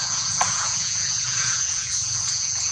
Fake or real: fake